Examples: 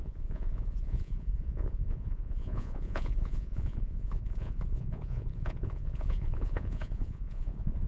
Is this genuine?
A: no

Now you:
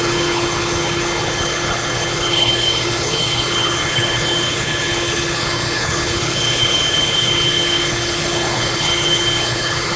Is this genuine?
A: no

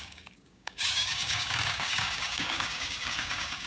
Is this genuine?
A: no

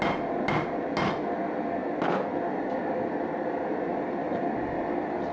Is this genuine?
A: yes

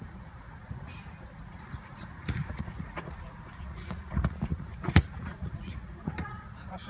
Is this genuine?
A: no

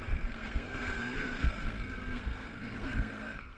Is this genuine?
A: no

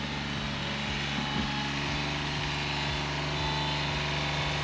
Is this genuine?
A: yes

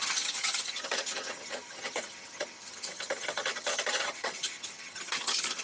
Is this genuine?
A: no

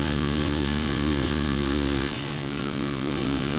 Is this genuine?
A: no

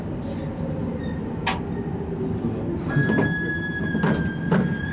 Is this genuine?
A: yes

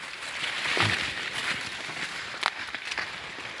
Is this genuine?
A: yes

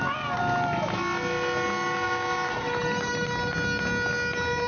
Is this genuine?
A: yes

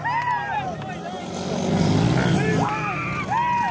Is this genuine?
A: yes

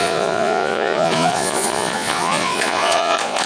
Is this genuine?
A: no